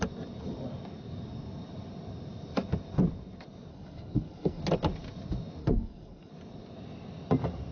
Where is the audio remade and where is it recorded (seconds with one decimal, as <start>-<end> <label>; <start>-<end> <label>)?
0.0-3.7 recorded; 3.7-4.6 remade; 4.6-5.6 recorded; 5.6-6.3 remade; 6.3-7.7 recorded